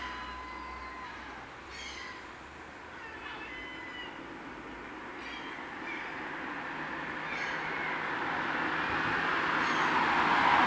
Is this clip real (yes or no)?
yes